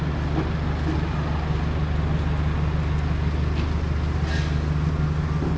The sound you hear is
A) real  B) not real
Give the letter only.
A